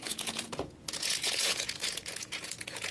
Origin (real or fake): fake